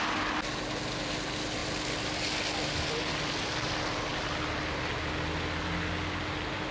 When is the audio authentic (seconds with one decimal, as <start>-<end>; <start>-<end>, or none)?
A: 0.0-6.7